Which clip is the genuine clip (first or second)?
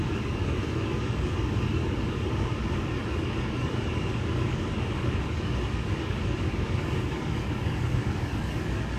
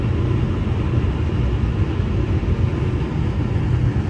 second